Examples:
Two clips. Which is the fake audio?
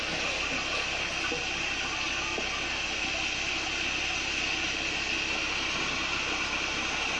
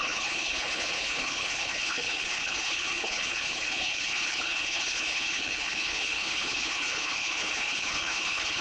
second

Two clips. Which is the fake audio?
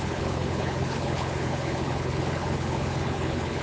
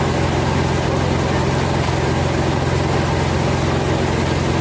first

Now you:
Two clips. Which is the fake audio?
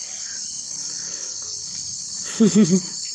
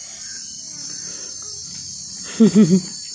first